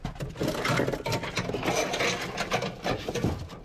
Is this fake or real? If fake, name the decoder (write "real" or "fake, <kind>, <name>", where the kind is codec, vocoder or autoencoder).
real